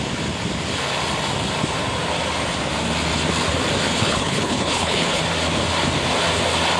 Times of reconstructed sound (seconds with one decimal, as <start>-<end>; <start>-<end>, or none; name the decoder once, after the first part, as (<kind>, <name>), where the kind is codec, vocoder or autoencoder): 3.9-5.2 (codec, HILCodec)